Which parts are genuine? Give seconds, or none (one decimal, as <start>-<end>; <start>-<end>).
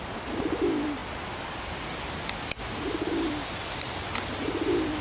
0.0-5.0